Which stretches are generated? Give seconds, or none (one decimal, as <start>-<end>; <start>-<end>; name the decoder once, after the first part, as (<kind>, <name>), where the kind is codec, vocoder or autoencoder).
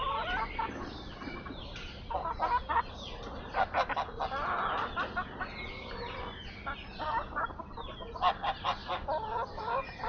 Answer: none